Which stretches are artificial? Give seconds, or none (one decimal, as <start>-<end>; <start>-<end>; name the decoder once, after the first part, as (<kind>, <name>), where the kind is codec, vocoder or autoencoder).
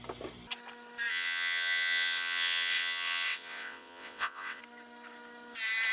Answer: 1.1-4.6 (vocoder, WaveNeXt)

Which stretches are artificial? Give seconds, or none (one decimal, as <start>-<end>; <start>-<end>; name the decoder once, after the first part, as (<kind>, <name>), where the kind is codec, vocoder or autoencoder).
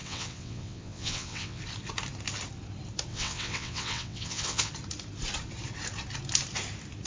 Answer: 0.0-1.6 (vocoder, WaveNeXt); 3.1-4.7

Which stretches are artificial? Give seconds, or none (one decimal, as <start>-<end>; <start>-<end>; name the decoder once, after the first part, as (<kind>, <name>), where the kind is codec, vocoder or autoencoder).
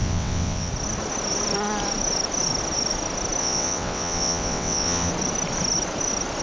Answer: 0.0-0.7 (vocoder, WaveNeXt); 3.4-5.1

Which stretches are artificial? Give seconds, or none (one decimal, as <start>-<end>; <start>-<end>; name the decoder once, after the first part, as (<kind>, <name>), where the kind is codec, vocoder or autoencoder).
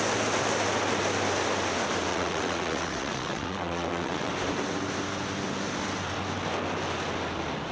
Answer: 2.1-4.3 (vocoder, WaveNeXt)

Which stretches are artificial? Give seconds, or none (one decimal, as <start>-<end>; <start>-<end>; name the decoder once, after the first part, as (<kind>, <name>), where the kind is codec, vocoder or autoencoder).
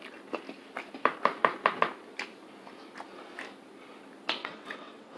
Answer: 4.4-5.2 (vocoder, WaveNeXt)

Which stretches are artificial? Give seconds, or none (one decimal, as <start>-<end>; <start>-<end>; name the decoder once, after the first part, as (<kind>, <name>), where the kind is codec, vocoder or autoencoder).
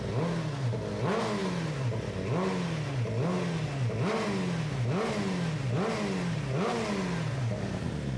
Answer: none